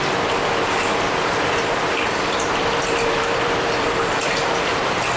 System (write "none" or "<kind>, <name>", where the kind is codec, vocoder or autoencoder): vocoder, BigVGAN v2